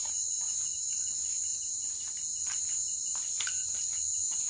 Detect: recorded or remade recorded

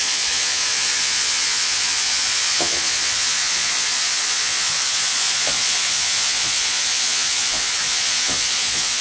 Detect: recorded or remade remade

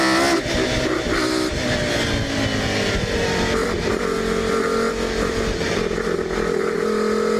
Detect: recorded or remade recorded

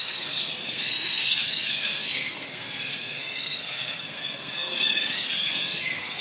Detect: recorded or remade remade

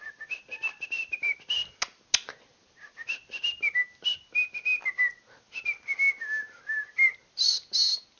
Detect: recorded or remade recorded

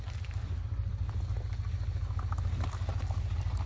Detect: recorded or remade recorded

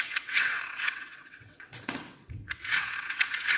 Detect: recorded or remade remade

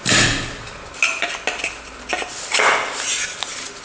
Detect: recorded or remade recorded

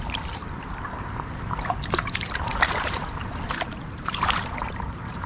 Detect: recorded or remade remade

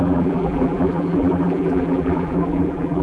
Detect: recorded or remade remade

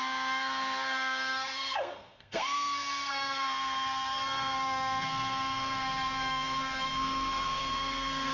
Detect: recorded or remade remade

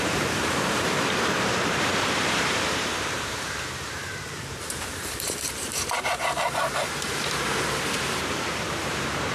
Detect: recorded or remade remade